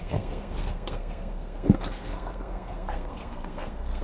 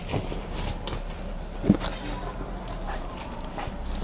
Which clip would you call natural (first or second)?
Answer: second